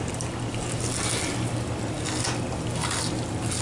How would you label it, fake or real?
real